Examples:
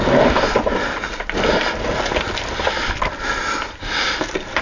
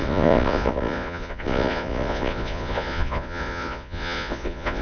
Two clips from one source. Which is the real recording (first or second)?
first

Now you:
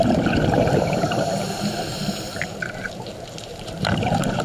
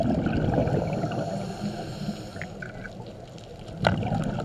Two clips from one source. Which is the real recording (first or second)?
second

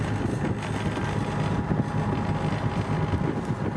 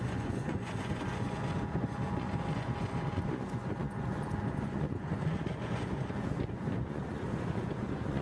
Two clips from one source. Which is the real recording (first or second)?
first